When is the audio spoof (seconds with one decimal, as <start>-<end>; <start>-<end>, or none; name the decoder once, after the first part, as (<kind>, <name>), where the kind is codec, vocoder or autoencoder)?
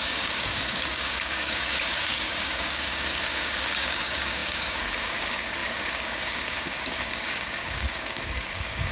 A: 0.0-8.9 (codec, DAC)